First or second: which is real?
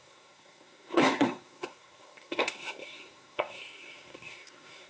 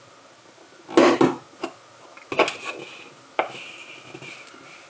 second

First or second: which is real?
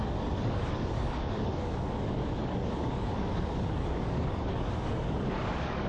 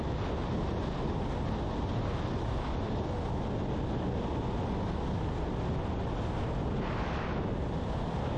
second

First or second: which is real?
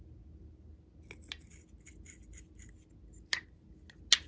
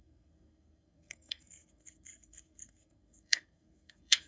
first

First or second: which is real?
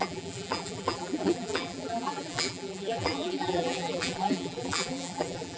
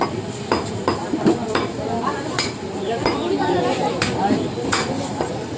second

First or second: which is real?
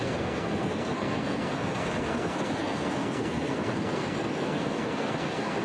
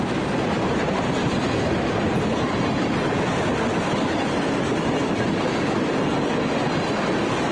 second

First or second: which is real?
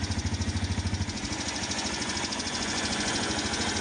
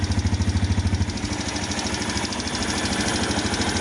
second